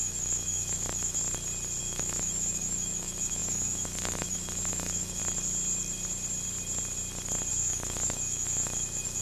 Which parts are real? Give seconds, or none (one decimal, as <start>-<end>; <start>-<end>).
1.2-1.8; 5.2-7.5